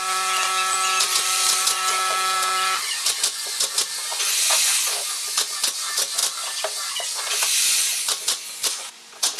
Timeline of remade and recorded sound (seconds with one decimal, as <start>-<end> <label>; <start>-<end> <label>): 0.0-6.2 remade; 6.2-6.9 recorded; 6.9-9.4 remade